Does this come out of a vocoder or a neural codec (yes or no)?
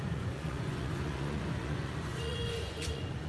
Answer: yes